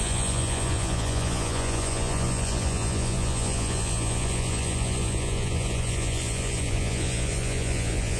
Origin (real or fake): fake